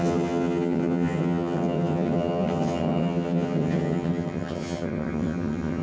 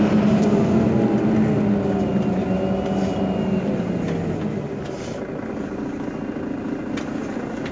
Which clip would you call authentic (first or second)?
second